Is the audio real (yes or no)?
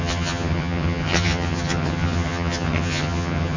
no